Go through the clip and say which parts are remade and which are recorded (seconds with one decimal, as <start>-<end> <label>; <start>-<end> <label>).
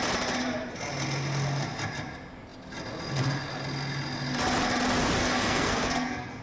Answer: 0.0-5.2 recorded; 5.2-6.4 remade